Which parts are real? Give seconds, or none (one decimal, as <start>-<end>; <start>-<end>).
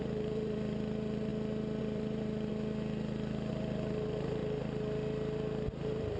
1.3-1.8; 2.5-3.5; 4.4-5.7